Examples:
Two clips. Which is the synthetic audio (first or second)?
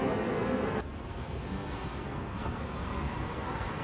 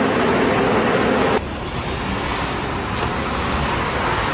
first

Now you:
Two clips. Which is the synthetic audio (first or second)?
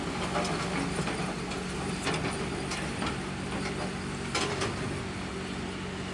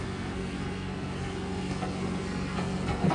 second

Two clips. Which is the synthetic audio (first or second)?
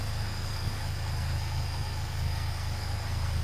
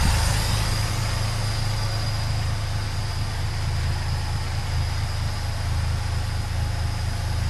first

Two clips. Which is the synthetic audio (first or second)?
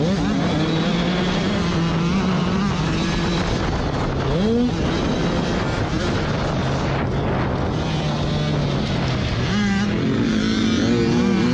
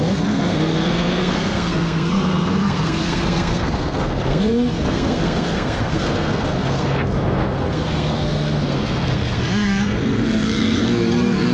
second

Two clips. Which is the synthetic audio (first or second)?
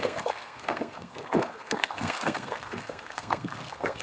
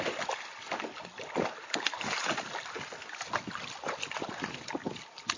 first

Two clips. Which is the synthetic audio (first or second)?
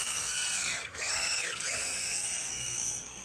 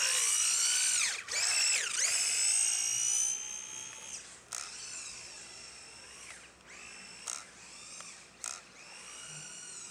first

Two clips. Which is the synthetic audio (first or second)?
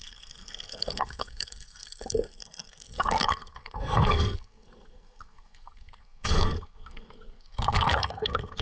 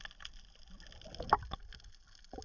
first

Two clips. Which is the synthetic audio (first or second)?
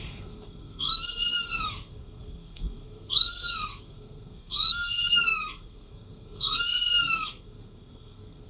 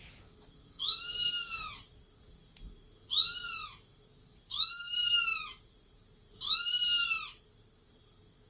first